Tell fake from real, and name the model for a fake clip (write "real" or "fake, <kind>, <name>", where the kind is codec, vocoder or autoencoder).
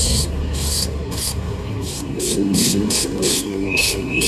fake, codec, SNAC